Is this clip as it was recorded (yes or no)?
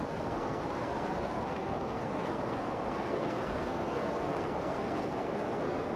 no